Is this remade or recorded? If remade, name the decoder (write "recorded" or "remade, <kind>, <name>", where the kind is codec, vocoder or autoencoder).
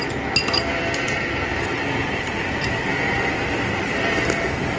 remade, vocoder, BigVGAN v2